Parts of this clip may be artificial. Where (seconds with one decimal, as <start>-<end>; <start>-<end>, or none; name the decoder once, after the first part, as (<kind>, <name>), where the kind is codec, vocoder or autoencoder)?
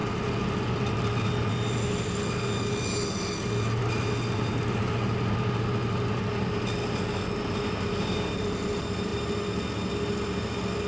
none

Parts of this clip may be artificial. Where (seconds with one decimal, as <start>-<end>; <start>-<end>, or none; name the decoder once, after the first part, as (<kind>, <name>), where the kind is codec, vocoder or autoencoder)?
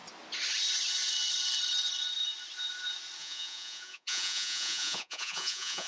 3.2-5.9 (vocoder, Vocos)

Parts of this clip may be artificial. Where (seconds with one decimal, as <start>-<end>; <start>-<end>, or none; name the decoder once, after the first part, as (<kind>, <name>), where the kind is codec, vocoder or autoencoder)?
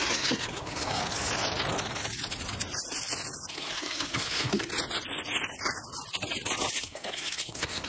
0.0-1.0 (codec, SNAC); 3.5-4.7; 6.8-7.9